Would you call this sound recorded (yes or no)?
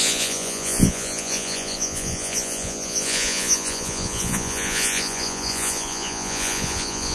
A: no